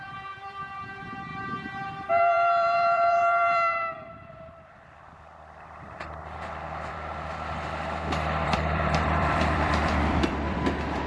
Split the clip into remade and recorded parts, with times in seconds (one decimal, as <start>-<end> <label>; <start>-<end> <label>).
0.0-1.3 remade; 1.3-2.1 recorded; 2.1-11.1 remade